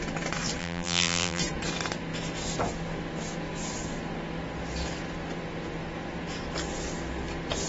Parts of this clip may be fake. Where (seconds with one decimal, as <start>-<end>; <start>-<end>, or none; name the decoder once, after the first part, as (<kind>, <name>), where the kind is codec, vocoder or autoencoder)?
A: 0.6-1.4 (vocoder, BigVGAN v2)